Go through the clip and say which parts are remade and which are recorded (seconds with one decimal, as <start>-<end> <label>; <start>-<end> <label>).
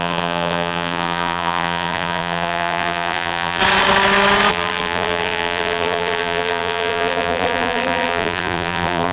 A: 0.0-3.6 remade; 3.6-4.5 recorded; 4.5-9.1 remade